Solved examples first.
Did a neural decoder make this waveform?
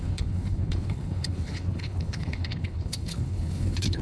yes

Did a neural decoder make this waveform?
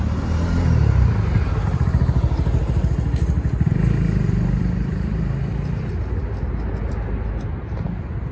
no